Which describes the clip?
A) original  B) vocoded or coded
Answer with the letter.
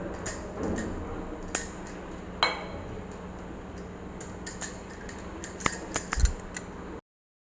A